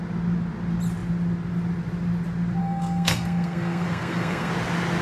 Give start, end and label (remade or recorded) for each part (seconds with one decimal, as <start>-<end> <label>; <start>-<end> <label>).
0.0-2.6 recorded; 2.6-4.5 remade; 4.5-5.0 recorded